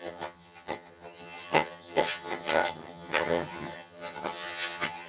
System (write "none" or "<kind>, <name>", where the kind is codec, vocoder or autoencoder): vocoder, HiFi-GAN